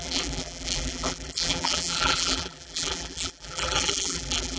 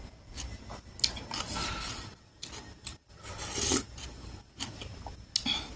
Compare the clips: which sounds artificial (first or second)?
first